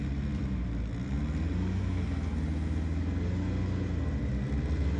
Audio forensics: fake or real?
real